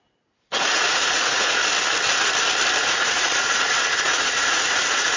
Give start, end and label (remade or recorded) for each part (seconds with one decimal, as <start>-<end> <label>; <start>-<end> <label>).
0.0-1.6 remade; 1.6-2.8 recorded; 2.8-5.2 remade